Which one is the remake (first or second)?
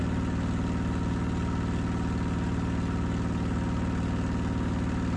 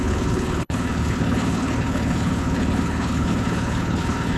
second